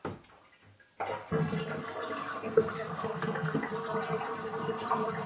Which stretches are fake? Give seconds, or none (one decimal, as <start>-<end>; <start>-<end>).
2.3-3.7